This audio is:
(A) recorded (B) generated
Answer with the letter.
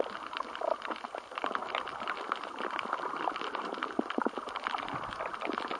B